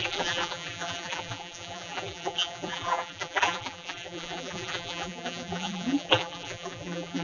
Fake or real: fake